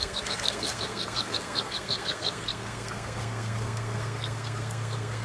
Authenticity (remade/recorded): remade